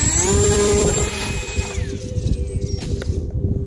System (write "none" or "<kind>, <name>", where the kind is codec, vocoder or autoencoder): vocoder, BigVGAN v2